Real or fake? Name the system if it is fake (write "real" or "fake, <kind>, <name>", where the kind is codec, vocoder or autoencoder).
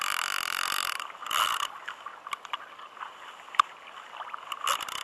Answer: real